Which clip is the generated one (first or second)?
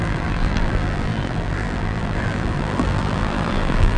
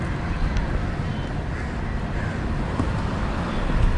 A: first